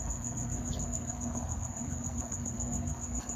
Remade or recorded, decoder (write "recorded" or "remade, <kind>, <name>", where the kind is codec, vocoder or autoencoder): remade, codec, SNAC